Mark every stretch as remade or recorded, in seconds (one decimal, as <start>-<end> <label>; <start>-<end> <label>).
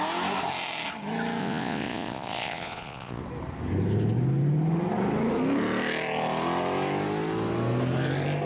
0.0-1.4 recorded; 1.4-3.2 remade; 3.2-8.5 recorded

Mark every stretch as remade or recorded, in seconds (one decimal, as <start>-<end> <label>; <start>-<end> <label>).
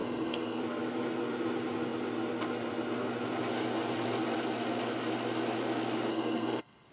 0.0-0.6 remade; 0.6-6.1 recorded; 6.1-6.9 remade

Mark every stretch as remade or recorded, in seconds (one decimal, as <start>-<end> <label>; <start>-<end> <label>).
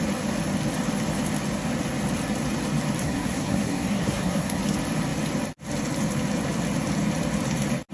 0.0-3.0 recorded; 3.0-4.6 remade; 4.6-7.9 recorded